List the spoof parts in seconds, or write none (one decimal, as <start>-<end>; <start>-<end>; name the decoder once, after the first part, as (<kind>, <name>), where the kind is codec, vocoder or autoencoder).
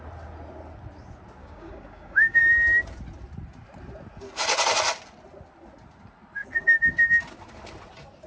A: 1.4-2.4 (codec, DAC)